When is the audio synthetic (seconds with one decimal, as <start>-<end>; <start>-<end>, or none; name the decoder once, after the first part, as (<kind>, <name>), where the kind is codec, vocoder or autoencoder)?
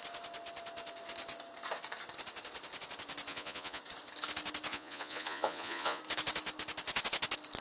3.3-3.8 (vocoder, Vocos); 4.7-6.0